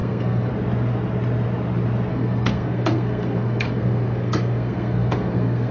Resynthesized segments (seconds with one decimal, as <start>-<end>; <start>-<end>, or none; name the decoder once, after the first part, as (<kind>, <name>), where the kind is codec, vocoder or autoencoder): 0.0-0.5 (codec, SNAC); 2.1-5.7